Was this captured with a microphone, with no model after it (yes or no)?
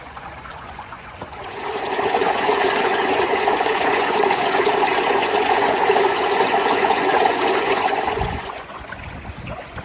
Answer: no